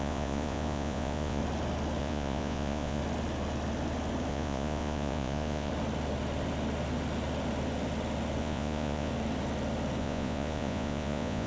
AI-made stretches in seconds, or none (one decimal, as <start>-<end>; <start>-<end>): 0.0-1.4; 2.0-3.0; 4.3-5.7; 8.4-9.1; 10.0-11.5